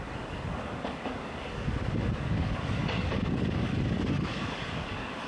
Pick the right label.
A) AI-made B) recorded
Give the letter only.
A